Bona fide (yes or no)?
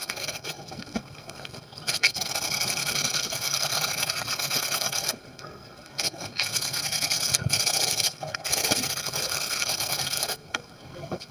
no